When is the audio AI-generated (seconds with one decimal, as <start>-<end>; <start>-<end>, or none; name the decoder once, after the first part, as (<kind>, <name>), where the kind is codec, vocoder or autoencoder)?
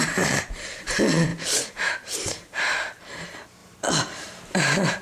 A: 0.0-5.0 (vocoder, BigVGAN v2)